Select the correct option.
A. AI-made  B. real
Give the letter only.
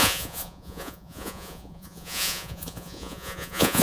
A